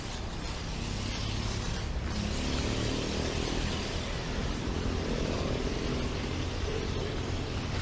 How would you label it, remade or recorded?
recorded